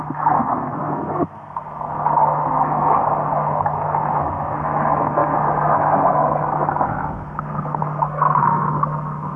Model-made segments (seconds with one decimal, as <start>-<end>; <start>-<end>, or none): 0.0-9.4

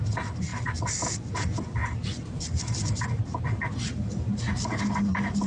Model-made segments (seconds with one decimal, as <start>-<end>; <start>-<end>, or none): none

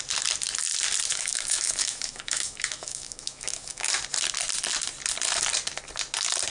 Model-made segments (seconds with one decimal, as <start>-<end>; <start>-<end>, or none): 1.1-3.9

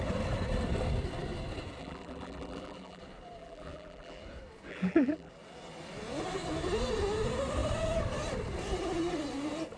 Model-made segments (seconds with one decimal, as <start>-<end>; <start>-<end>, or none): 1.8-3.0; 3.4-4.2; 4.7-5.3

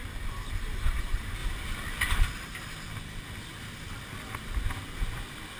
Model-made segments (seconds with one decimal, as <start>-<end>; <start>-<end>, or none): none

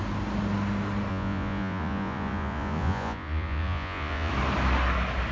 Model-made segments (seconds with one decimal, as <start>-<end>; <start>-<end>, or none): 1.1-4.3

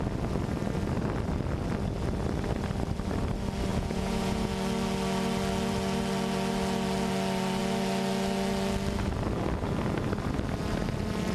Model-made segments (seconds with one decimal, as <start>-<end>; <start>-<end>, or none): 3.7-4.5

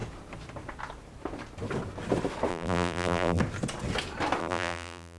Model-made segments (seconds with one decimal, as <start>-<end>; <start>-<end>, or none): 2.5-3.4; 4.4-5.2